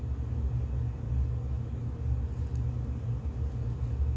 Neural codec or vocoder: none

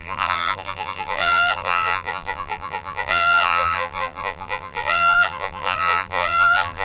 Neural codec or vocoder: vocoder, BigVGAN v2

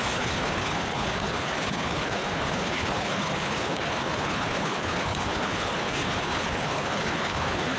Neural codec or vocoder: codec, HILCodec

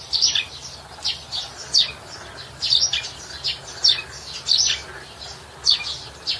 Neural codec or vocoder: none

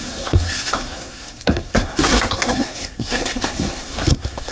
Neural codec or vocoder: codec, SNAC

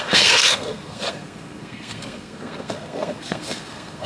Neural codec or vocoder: codec, SNAC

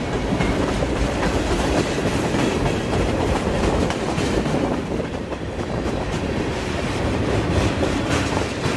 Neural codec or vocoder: vocoder, BigVGAN v2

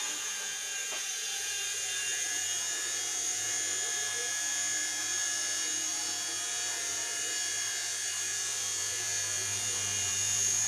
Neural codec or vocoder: vocoder, Vocos